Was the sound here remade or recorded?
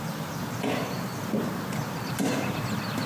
recorded